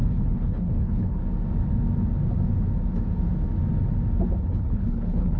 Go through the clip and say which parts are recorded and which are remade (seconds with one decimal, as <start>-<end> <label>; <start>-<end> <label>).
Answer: 0.0-1.2 remade; 1.2-4.4 recorded; 4.4-5.4 remade